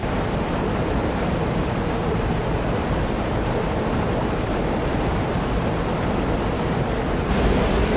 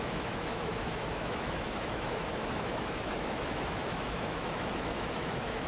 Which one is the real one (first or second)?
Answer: first